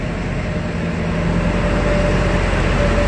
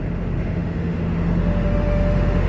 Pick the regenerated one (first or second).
second